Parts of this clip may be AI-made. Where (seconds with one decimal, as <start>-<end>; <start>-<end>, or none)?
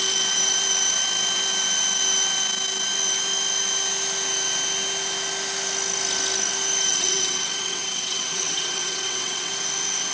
6.9-9.5